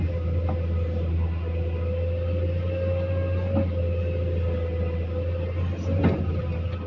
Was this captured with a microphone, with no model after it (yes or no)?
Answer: yes